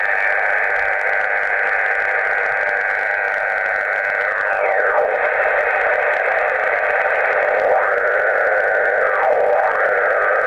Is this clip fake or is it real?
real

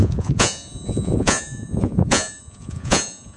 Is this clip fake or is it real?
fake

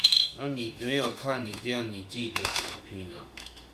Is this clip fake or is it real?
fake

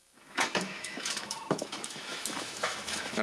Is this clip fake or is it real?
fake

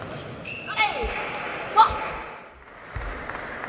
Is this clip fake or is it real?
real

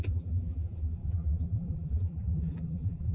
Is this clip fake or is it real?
fake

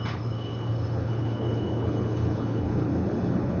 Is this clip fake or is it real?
fake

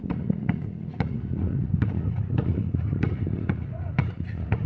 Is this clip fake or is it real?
fake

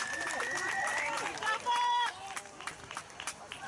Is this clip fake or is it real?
fake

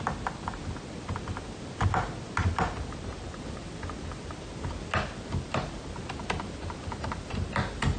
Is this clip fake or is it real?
real